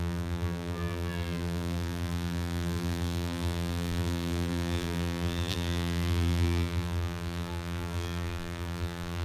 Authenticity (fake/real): fake